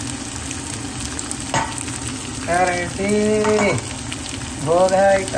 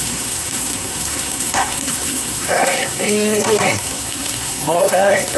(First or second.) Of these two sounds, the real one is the first